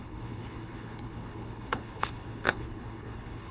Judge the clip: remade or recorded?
remade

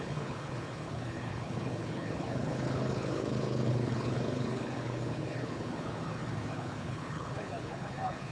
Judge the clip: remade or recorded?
remade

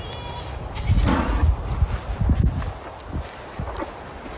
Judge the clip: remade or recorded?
recorded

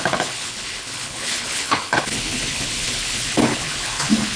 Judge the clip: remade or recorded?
remade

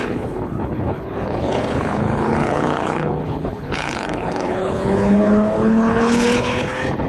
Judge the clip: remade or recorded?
remade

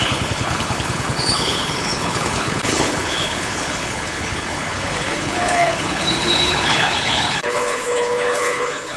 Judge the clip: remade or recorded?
remade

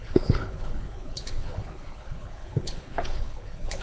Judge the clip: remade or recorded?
remade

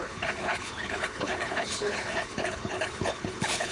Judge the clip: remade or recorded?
remade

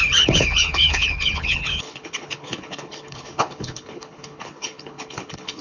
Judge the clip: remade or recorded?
remade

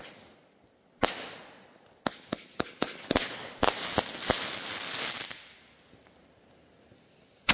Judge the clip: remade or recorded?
recorded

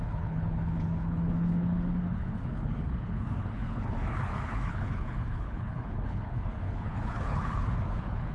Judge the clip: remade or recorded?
remade